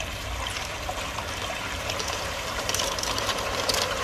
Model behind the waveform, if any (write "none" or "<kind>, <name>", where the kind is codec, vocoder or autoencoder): vocoder, BigVGAN v2